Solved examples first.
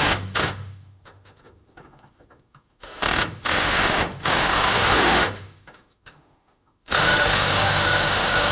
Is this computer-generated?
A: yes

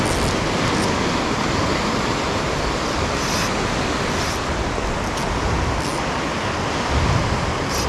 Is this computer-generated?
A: no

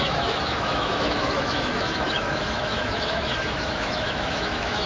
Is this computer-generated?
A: yes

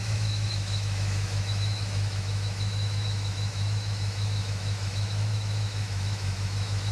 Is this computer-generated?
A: yes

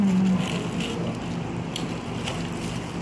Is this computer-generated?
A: no